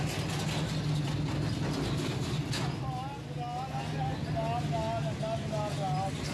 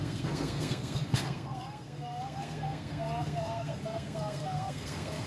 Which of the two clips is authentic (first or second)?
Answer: first